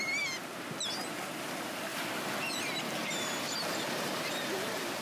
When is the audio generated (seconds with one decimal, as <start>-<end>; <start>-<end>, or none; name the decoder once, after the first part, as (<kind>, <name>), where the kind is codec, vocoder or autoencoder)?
none